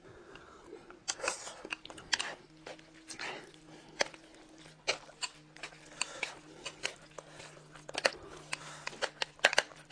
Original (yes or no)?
yes